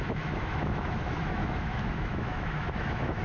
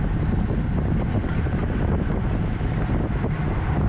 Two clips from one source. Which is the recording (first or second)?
second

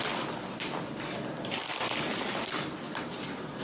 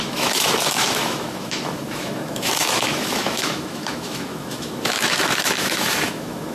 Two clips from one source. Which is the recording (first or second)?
first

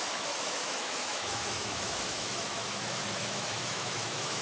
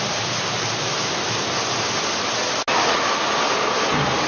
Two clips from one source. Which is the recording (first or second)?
second